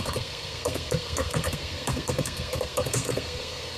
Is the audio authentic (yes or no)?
no